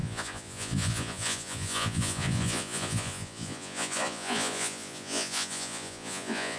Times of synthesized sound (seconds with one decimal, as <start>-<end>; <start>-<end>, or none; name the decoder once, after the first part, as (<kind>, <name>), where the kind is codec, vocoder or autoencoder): 0.0-6.6 (vocoder, Vocos)